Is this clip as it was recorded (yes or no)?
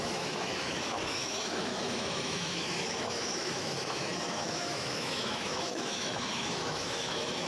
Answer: no